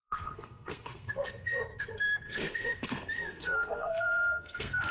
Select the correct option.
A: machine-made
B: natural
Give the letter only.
A